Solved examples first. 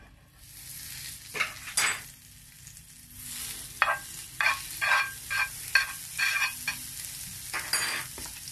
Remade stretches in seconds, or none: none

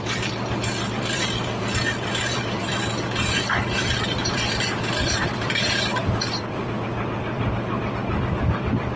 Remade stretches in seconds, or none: 0.0-9.0 (vocoder, BigVGAN v2)